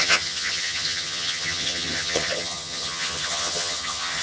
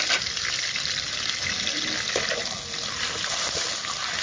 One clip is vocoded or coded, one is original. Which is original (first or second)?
second